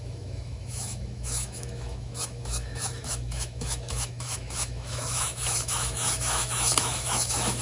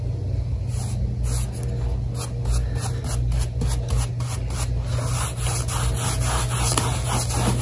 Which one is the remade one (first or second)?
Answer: first